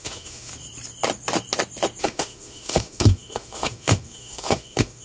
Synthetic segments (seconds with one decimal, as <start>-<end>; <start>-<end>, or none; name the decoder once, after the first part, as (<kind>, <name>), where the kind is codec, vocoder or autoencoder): 0.0-0.5 (autoencoder, DAC-VAE); 2.0-5.0